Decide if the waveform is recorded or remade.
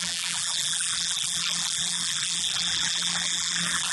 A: remade